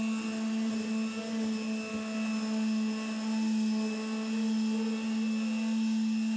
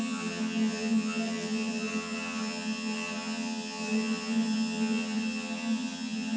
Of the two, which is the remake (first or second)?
second